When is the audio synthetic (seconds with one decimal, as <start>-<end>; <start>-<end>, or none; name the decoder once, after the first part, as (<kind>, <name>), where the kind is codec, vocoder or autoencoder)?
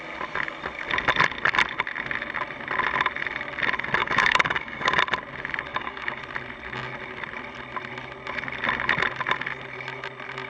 4.0-5.0 (codec, DAC); 5.7-6.2